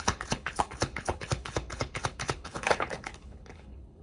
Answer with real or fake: fake